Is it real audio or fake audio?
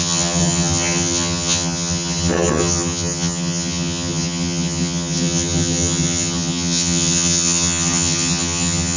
fake